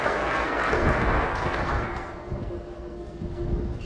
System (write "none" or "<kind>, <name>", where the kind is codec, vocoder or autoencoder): codec, SNAC